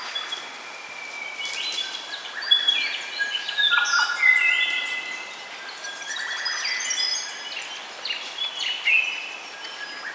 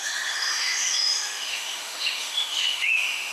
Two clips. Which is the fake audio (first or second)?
second